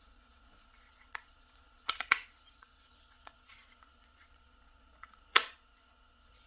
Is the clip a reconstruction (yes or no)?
yes